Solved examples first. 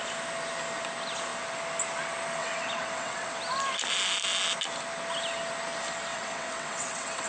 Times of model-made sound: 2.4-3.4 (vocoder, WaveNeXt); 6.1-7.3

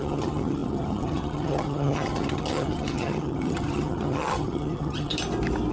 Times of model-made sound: 0.0-5.1 (vocoder, HiFi-GAN)

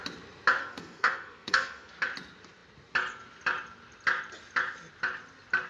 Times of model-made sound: 0.6-1.9 (codec, SNAC)

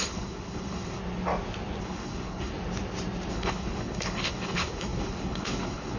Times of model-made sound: 0.0-1.0 (codec, HILCodec); 1.8-2.5; 3.3-6.0

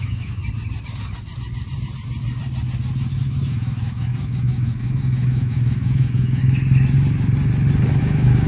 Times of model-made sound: 0.0-0.4 (autoencoder, DAC-VAE); 3.2-6.4; 8.0-8.5

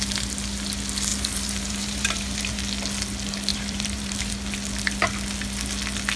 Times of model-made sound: 1.1-2.6 (vocoder, BigVGAN v2); 3.5-4.3

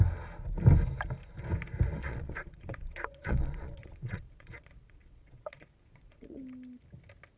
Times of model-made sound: 2.0-6.4 (vocoder, Vocos)

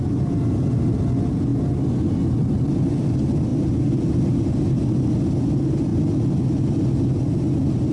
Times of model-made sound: none